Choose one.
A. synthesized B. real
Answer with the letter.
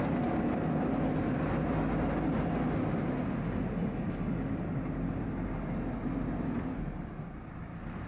B